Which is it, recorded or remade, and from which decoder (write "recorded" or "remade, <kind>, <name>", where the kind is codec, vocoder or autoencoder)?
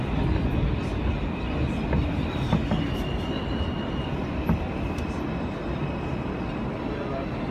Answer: recorded